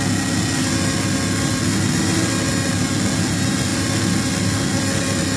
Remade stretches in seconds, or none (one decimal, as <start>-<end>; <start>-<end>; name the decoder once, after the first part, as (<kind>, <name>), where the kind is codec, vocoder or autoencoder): none

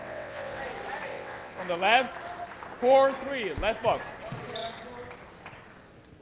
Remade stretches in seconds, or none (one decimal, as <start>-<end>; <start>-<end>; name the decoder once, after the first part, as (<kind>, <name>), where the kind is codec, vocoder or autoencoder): 0.0-0.6 (vocoder, WaveNeXt); 1.1-1.6